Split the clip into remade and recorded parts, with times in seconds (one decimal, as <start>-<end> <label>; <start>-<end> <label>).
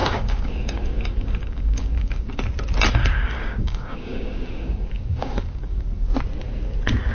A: 0.0-2.4 remade; 2.4-3.0 recorded; 3.0-5.8 remade; 5.8-7.1 recorded